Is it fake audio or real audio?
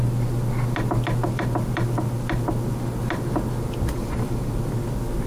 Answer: real